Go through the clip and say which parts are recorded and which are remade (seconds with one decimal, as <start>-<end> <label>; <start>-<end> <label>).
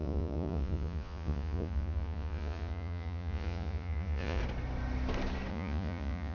0.0-4.4 remade; 4.4-5.5 recorded; 5.5-6.3 remade